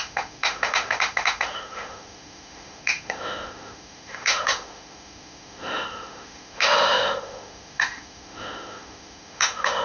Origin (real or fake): fake